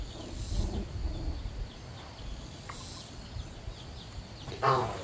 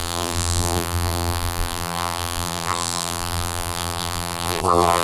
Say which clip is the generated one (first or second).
second